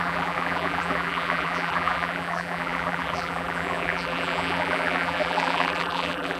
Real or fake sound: fake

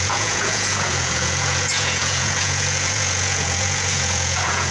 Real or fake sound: fake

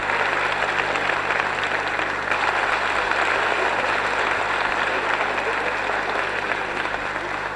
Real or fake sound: real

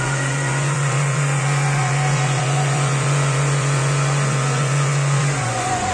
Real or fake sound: fake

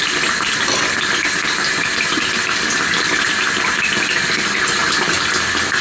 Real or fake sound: real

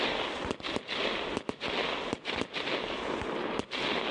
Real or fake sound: real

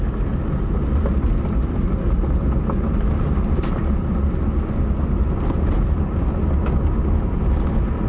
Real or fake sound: real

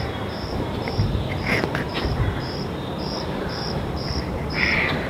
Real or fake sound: fake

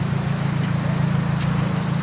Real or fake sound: real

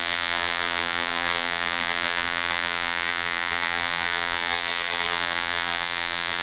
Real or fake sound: fake